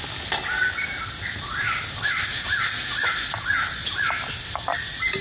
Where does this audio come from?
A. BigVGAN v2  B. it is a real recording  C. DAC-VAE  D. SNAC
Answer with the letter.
B